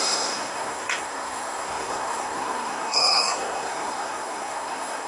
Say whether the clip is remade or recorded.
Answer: remade